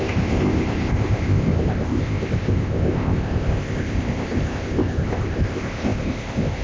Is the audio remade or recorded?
remade